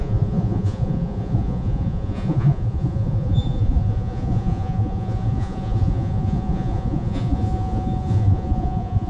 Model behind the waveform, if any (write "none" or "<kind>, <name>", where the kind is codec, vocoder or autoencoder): vocoder, Vocos